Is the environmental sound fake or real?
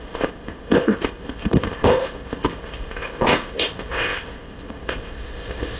fake